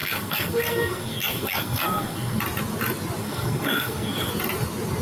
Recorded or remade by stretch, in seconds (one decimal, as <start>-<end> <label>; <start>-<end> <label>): 0.0-2.4 remade; 2.4-3.2 recorded; 3.2-4.3 remade; 4.3-5.0 recorded